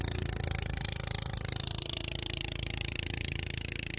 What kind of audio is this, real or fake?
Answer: fake